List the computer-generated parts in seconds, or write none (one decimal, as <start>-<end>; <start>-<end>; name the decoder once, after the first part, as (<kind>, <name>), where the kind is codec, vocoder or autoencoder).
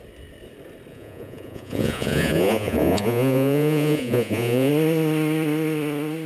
0.9-4.7 (vocoder, Vocos)